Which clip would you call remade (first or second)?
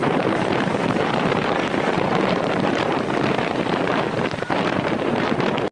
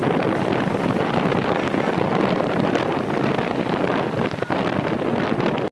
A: first